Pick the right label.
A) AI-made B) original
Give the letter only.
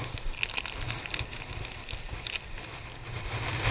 B